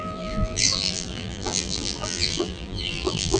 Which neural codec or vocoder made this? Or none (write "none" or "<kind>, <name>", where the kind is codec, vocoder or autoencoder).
vocoder, BigVGAN v2